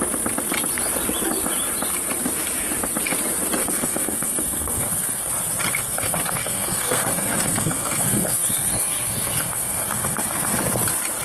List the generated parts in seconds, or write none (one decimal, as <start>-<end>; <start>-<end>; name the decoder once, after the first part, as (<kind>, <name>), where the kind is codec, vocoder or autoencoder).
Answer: 3.6-5.3 (codec, SNAC); 5.7-10.6